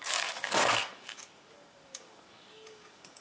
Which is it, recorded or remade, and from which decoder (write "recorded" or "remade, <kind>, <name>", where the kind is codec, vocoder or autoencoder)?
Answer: remade, codec, DAC